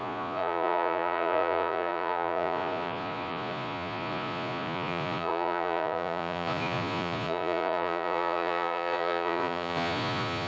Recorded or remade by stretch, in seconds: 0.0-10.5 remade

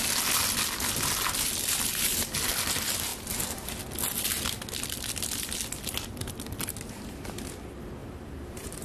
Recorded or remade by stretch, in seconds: 0.0-8.0 recorded; 8.0-8.8 remade